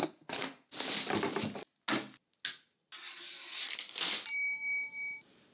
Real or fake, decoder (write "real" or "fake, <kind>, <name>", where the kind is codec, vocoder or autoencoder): real